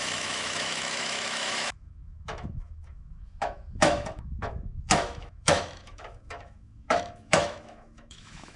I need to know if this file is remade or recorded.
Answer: remade